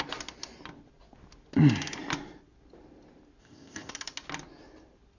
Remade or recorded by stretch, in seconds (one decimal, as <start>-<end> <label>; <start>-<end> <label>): 0.0-3.4 recorded; 3.4-3.9 remade; 3.9-5.2 recorded